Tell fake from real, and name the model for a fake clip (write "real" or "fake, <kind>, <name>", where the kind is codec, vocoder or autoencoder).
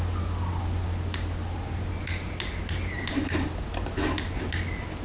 real